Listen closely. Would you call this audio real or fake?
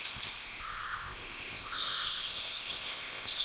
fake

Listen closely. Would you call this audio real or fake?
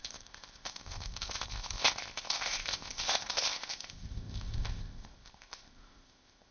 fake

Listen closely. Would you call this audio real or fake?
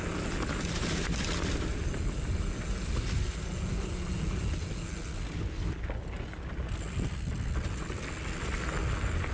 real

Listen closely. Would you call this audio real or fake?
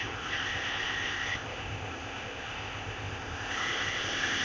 fake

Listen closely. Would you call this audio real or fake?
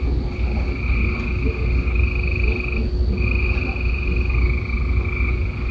real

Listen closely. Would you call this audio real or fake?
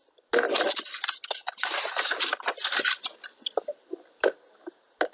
real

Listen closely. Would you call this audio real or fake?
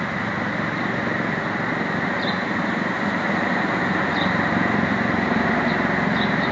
real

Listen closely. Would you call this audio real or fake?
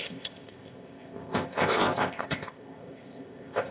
fake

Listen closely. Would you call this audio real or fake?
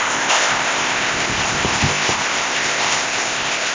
fake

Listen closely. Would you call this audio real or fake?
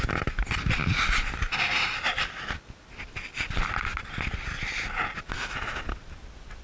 real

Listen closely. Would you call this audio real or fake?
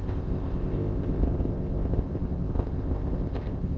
fake